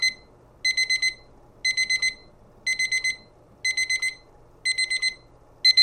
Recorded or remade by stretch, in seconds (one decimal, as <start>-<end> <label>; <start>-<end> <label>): 0.0-5.8 recorded